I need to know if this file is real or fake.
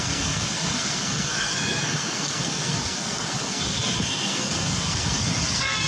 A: fake